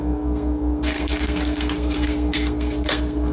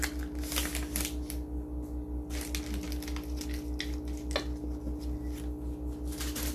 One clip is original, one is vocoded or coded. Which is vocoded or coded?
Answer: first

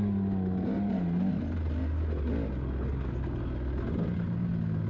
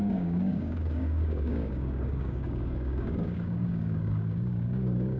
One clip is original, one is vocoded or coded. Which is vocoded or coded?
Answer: second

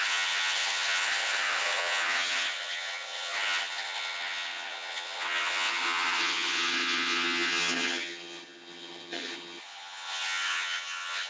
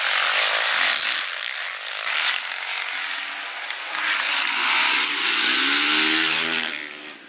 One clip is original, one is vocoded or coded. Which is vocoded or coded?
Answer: first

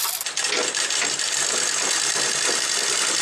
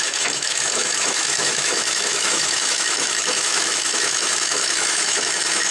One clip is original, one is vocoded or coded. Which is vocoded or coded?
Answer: second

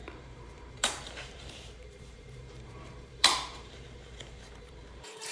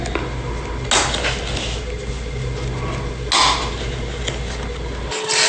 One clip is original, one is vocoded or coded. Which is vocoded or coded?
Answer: first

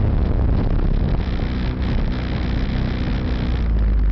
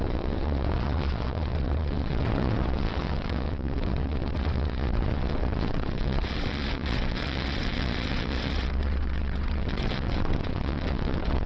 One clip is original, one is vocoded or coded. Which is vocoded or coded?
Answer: second